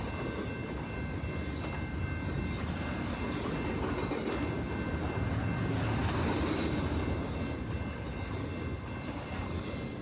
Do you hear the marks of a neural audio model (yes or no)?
no